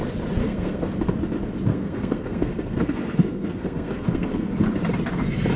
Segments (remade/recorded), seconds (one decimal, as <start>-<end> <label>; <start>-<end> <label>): 0.0-0.4 recorded; 0.4-0.9 remade; 0.9-1.7 recorded; 1.7-4.5 remade; 4.5-5.6 recorded